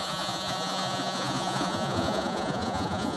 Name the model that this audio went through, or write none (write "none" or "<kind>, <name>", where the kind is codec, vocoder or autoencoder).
vocoder, Vocos